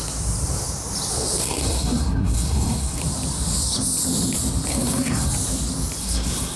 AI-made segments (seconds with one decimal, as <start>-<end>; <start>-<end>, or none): 1.4-3.0; 4.7-5.3; 6.0-6.6

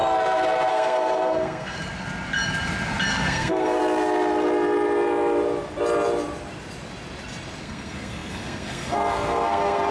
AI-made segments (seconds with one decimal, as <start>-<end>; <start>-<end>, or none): 0.7-1.8; 3.1-3.8; 7.6-9.9

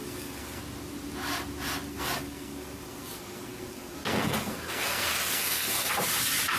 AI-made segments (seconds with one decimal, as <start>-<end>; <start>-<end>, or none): 0.0-0.6; 1.9-5.9

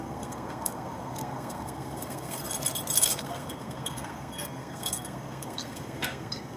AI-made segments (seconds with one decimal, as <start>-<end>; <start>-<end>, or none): 0.0-2.4; 3.0-6.6

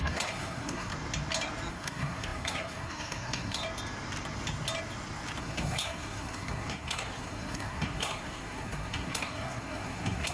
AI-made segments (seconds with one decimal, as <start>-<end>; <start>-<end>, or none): 0.0-0.9; 1.7-3.6; 5.4-10.3